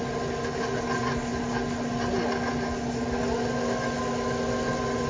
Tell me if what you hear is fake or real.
real